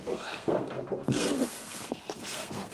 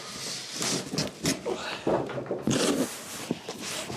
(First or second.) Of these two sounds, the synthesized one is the first